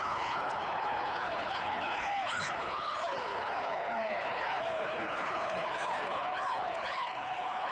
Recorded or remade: remade